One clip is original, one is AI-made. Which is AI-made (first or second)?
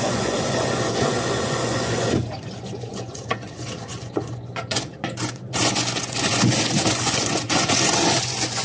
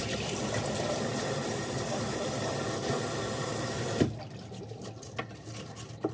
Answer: first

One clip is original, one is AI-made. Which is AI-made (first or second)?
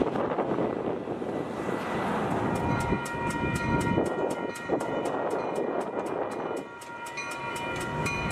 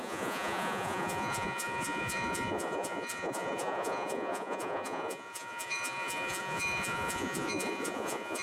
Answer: second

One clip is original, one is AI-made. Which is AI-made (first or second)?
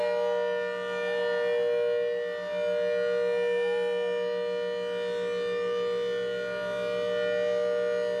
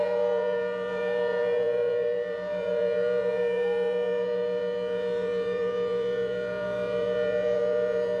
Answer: second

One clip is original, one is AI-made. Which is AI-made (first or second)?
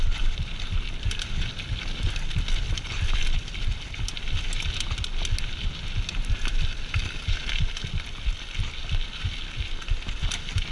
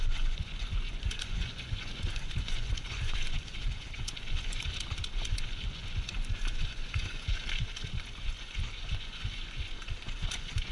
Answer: second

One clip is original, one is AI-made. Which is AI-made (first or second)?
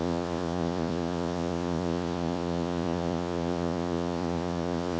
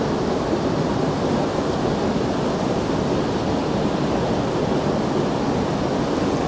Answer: first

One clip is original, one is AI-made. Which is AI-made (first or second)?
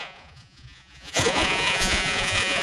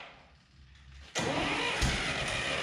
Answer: first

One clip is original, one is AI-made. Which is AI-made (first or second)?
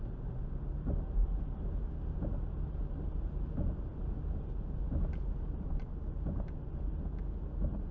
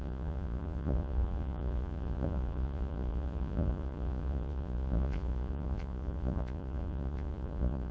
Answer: second